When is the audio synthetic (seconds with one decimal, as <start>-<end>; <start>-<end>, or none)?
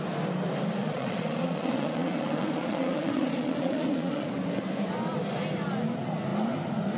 0.8-4.3